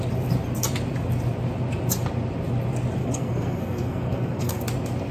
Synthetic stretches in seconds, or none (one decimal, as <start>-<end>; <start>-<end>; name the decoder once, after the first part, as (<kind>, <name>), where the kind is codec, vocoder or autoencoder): 3.0-4.6 (codec, SNAC)